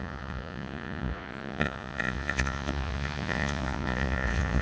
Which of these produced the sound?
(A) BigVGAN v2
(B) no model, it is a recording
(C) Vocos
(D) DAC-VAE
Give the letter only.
C